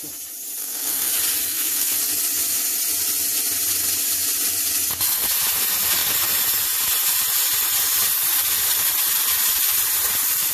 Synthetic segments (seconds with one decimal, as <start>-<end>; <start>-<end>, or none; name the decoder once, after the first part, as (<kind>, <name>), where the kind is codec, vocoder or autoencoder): 0.6-1.1 (codec, SNAC); 1.5-2.0